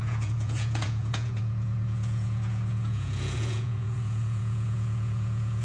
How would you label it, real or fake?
fake